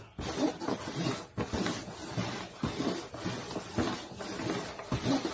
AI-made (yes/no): no